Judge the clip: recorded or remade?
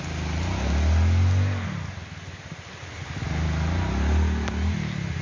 recorded